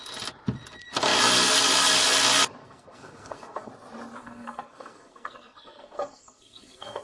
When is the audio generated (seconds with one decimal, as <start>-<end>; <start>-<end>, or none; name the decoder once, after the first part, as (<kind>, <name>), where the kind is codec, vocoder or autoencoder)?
2.6-3.7 (codec, SNAC); 4.2-7.0